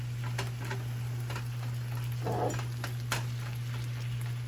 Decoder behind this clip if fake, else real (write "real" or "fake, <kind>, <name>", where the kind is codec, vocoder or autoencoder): real